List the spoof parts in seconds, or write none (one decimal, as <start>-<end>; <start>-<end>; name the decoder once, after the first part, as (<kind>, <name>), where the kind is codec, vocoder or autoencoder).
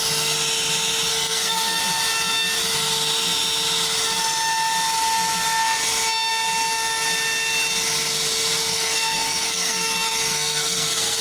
1.1-1.8 (codec, SNAC); 8.7-11.2